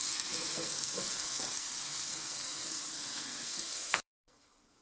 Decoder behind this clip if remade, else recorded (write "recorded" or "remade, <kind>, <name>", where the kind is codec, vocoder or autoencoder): remade, codec, SNAC